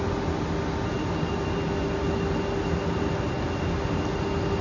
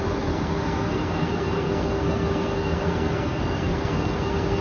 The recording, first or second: first